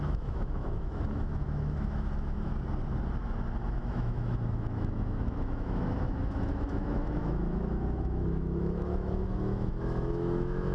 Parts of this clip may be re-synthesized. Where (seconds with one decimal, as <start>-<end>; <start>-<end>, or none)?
0.0-2.5; 3.7-10.7